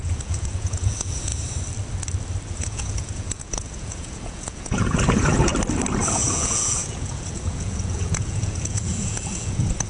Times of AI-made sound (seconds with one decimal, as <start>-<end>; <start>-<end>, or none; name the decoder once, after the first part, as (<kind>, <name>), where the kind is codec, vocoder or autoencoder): 0.0-1.3 (vocoder, Vocos); 2.5-5.5; 6.1-9.9